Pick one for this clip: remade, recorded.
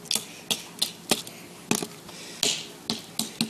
recorded